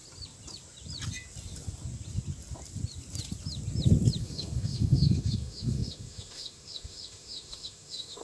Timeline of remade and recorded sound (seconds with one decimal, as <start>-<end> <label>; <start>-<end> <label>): 0.0-4.2 recorded; 4.2-8.2 remade